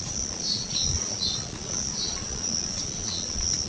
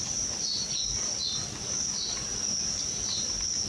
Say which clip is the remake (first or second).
first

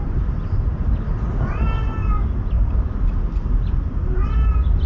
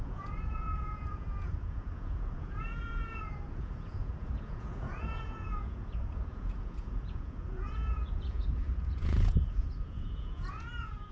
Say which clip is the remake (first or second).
second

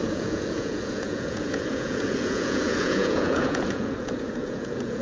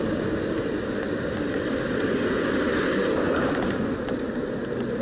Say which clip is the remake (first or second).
first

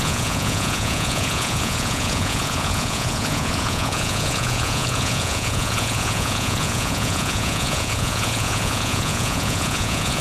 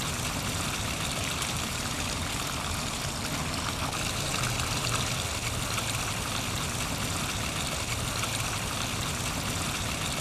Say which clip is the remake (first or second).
first